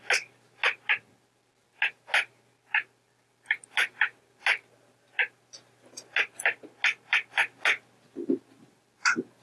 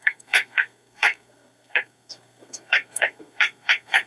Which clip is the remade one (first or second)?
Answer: second